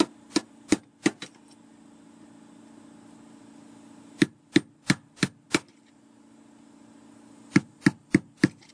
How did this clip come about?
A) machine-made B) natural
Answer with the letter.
B